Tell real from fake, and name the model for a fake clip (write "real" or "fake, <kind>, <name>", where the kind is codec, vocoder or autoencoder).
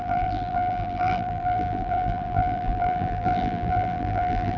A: fake, vocoder, BigVGAN v2